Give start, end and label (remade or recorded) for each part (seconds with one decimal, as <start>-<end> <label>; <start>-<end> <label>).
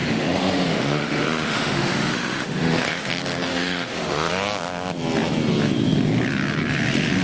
0.0-3.1 remade; 3.1-3.5 recorded; 3.5-4.3 remade; 4.3-7.2 recorded